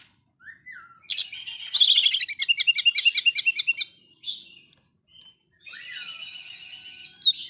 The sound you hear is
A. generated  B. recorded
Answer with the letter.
B